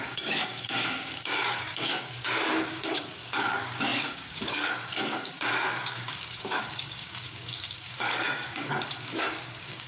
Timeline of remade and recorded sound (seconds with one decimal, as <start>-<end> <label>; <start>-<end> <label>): 0.0-9.9 remade